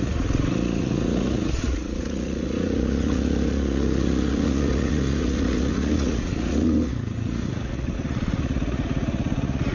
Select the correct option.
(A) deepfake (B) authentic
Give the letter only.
A